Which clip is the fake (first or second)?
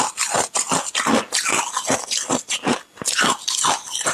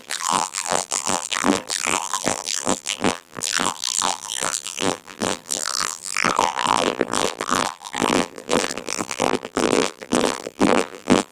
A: second